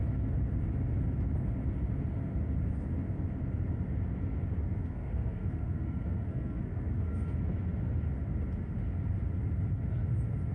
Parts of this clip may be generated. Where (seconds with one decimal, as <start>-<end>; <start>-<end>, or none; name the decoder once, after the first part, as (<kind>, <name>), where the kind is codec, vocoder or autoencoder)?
4.8-7.3 (codec, SNAC)